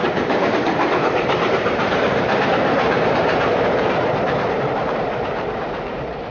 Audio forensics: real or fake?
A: fake